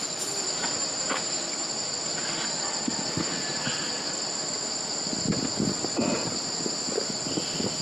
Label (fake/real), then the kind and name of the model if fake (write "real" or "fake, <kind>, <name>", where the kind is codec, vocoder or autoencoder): real